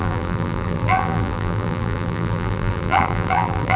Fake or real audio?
fake